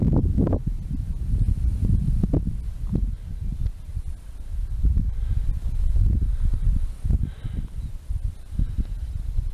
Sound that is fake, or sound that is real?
real